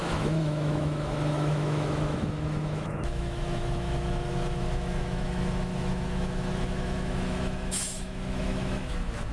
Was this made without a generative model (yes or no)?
no